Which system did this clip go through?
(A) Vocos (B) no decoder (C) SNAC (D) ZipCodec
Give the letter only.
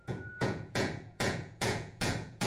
A